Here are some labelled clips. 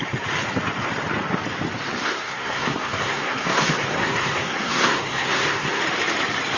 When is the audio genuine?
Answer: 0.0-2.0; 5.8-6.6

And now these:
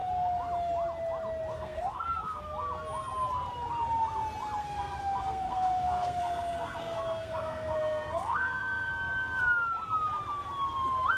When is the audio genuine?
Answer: 0.0-1.5; 2.4-4.6; 8.9-11.2

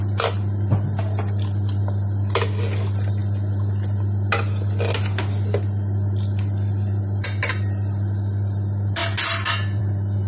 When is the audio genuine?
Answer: 0.0-10.3

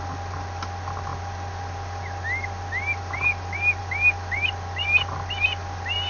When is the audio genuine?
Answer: 0.0-6.1